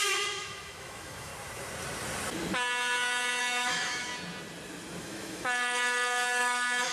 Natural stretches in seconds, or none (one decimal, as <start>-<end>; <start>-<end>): 1.3-3.4; 4.1-5.0